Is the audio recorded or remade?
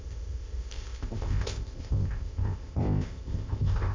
remade